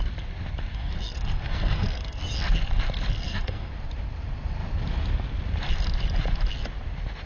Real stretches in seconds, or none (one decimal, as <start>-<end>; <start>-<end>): 0.0-0.7; 2.2-3.2; 3.7-7.3